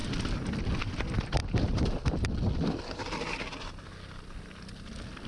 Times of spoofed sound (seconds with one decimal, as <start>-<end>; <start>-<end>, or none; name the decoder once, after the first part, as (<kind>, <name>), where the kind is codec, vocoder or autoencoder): none